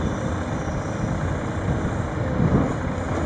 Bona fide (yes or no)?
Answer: yes